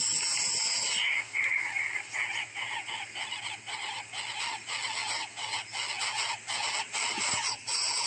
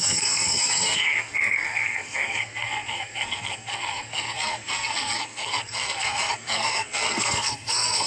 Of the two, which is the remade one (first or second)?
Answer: second